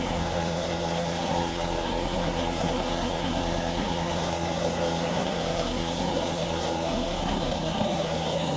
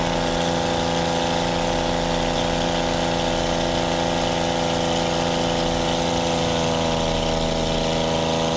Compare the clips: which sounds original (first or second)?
second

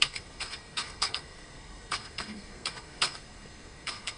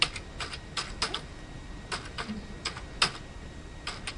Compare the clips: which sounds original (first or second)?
second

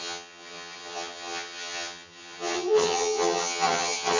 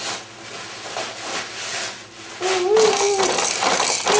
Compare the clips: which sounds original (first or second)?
second